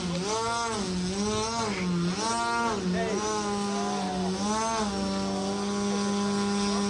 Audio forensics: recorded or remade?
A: recorded